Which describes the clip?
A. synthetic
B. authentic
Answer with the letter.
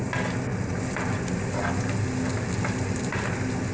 B